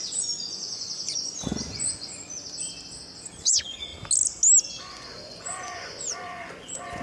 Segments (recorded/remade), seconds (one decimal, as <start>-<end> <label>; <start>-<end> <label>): 0.0-2.3 remade; 2.3-3.4 recorded; 3.4-3.9 remade; 3.9-4.8 recorded; 4.8-7.0 remade